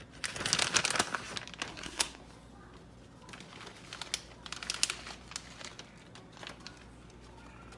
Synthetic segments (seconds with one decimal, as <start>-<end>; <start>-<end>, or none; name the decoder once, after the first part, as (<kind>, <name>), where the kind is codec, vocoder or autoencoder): 1.7-2.2 (codec, SNAC)